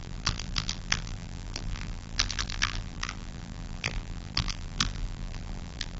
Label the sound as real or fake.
fake